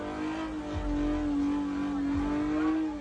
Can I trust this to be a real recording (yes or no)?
yes